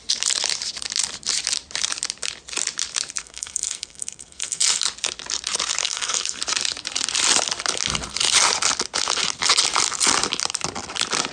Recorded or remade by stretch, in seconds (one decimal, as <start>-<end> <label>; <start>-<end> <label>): 0.0-3.2 recorded; 3.2-4.8 remade; 4.8-5.8 recorded; 5.8-6.4 remade; 6.4-11.3 recorded